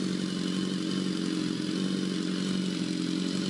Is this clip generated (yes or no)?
no